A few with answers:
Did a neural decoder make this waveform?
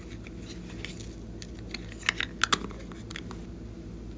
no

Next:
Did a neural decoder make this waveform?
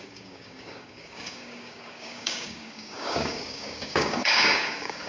yes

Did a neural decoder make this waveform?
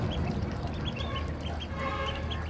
no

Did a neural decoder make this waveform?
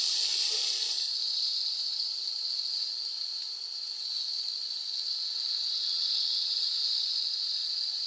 no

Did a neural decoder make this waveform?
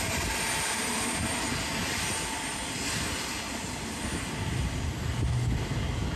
no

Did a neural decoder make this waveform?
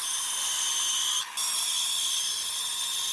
no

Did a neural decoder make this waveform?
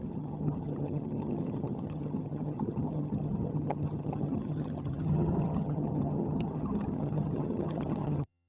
yes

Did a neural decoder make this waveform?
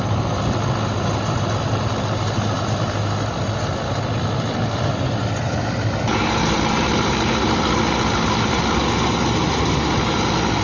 no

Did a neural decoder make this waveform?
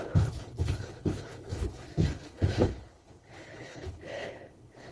yes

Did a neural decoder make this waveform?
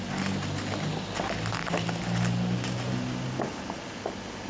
no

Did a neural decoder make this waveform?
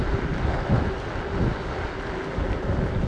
no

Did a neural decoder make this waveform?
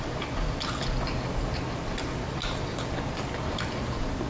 no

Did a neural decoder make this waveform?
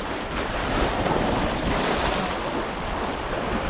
no